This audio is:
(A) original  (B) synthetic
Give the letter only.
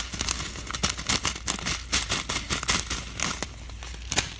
A